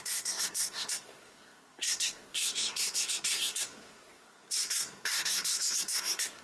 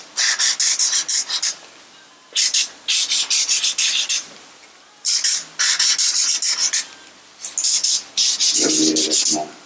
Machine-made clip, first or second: first